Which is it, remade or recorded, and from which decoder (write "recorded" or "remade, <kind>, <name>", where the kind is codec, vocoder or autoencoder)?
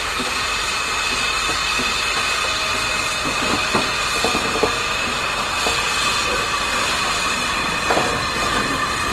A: recorded